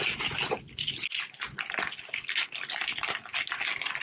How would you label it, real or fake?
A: real